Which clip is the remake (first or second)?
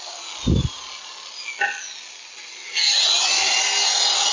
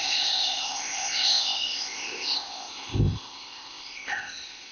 second